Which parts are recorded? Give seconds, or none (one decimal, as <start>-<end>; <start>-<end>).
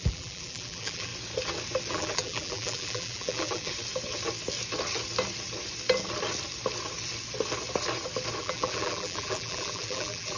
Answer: 1.1-1.9; 3.7-8.4